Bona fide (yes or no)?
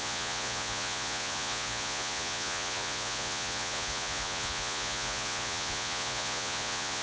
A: no